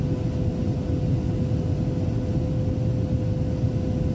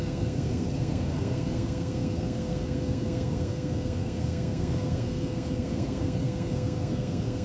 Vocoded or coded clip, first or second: second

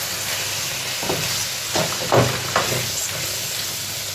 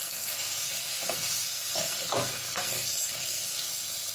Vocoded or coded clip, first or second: second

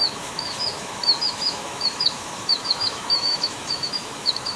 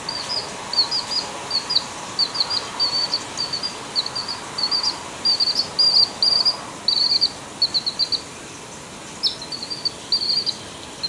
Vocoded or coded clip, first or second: first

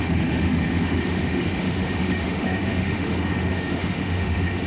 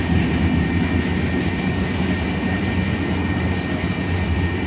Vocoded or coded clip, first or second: first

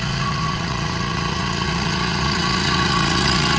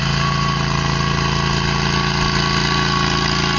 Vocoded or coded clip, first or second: first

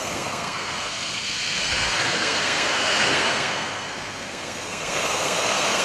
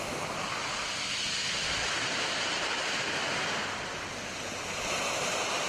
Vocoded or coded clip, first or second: first